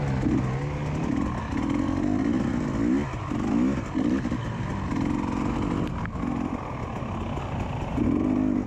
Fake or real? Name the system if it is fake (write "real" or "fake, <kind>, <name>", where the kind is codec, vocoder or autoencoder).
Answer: real